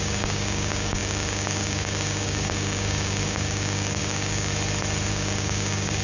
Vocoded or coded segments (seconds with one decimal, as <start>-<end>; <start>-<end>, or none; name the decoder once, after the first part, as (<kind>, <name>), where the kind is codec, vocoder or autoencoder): 0.0-4.5 (codec, DAC); 5.1-6.0